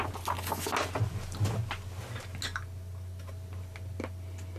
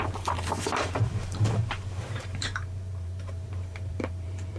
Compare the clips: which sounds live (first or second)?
first